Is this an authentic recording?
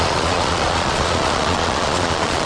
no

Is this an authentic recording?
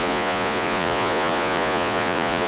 no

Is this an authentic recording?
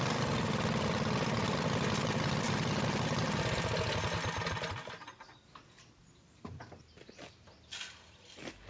yes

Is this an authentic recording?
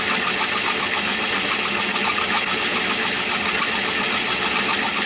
yes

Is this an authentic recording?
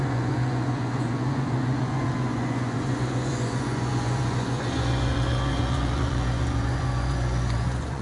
no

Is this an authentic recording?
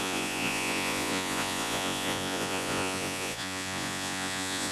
no